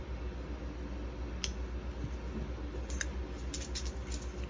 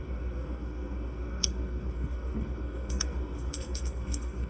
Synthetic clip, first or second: second